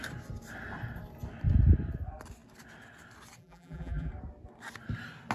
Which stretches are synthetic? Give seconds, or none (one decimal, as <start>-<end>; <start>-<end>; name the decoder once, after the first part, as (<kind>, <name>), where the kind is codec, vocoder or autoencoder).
3.4-4.1 (vocoder, BigVGAN v2)